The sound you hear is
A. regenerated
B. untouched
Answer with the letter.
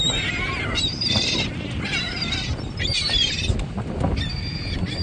B